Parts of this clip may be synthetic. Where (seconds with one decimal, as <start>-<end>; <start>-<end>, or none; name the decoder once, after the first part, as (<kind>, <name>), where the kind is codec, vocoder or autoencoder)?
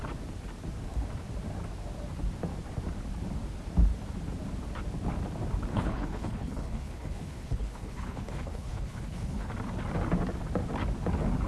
5.7-9.5 (codec, HILCodec)